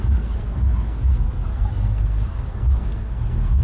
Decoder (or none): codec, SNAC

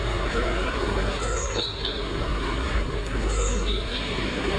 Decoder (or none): codec, SNAC